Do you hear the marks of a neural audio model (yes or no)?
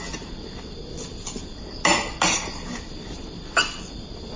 no